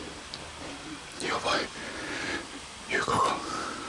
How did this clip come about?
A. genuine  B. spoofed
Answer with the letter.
A